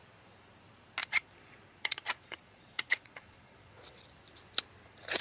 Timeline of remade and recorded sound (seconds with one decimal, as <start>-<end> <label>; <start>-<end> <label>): 0.0-1.0 recorded; 1.0-4.1 remade; 4.1-5.2 recorded